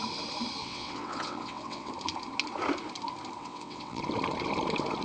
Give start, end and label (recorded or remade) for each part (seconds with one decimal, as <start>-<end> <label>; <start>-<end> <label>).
0.0-0.6 recorded; 0.6-1.9 remade; 1.9-3.4 recorded; 3.4-4.0 remade; 4.0-5.0 recorded